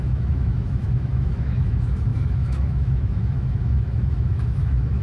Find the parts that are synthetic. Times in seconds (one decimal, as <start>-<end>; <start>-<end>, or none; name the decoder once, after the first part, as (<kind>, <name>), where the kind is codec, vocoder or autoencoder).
0.0-5.0 (autoencoder, DAC-VAE)